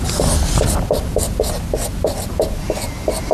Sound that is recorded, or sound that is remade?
recorded